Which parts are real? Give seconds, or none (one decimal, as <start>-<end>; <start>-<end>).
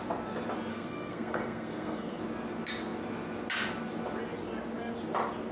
0.0-0.7; 2.2-5.5